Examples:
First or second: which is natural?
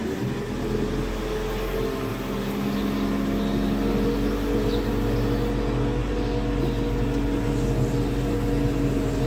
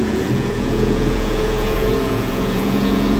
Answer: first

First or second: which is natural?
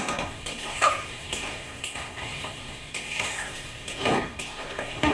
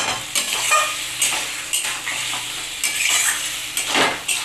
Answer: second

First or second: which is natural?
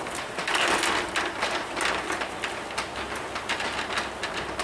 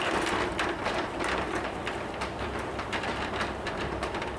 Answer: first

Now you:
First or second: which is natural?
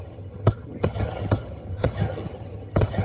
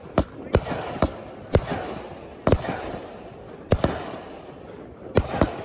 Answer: second